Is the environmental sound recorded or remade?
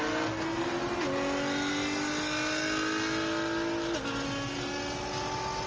recorded